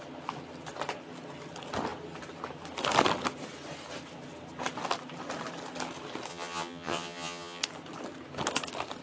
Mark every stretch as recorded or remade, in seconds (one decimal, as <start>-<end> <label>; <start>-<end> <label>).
0.0-6.3 recorded; 6.3-7.6 remade; 7.6-9.0 recorded